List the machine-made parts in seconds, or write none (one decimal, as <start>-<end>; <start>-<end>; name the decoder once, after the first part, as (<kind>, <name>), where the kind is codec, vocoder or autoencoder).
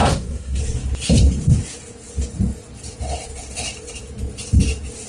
0.0-0.6 (codec, SNAC)